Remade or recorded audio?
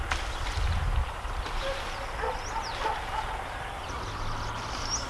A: recorded